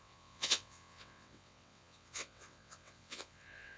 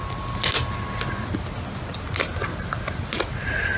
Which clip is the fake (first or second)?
first